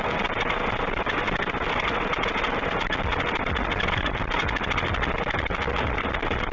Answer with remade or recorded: recorded